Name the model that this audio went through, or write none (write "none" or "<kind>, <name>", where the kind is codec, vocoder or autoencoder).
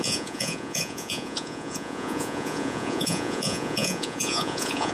vocoder, Vocos